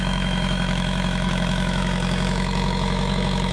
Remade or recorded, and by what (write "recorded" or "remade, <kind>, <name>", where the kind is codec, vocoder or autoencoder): remade, autoencoder, DAC-VAE